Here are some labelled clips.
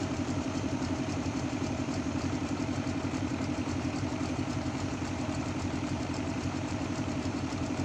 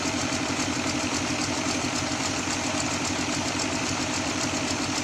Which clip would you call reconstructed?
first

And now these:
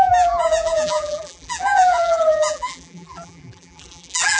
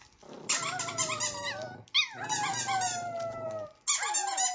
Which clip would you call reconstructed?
first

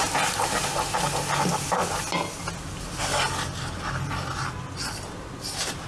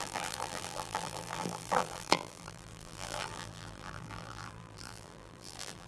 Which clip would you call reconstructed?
second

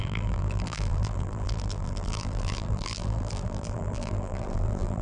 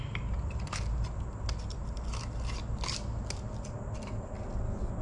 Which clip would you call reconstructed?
first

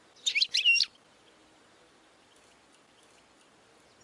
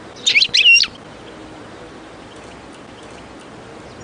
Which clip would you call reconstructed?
first